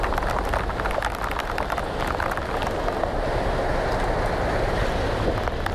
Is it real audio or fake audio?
real